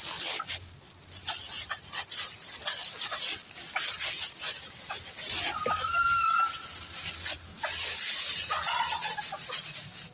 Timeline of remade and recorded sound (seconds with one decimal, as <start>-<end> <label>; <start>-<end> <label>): 0.0-4.4 recorded; 4.4-7.1 remade; 7.1-10.1 recorded